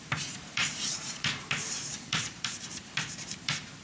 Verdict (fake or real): fake